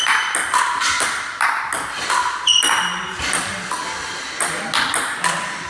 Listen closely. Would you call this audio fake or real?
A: real